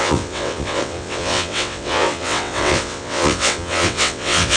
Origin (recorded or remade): remade